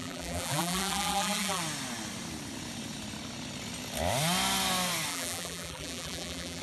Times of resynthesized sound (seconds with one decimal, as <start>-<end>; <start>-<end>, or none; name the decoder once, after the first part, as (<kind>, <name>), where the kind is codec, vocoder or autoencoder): 0.0-1.6 (vocoder, BigVGAN v2); 5.1-6.6